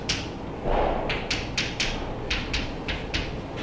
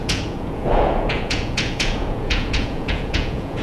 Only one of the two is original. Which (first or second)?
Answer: first